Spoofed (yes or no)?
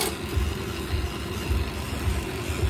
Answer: yes